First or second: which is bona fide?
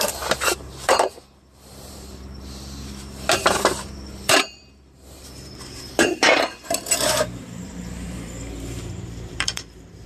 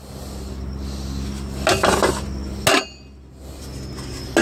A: second